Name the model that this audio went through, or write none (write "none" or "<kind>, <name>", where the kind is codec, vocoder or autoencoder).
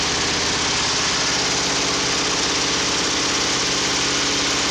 none